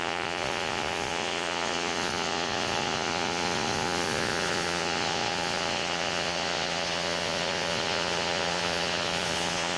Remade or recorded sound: remade